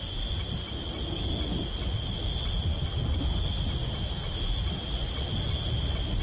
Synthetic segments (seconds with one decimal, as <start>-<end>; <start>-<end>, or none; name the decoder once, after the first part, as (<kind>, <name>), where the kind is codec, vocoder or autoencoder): none